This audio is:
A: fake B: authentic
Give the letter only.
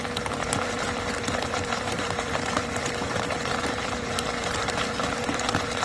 A